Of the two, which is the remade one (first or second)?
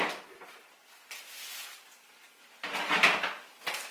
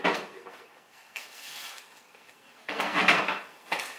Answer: second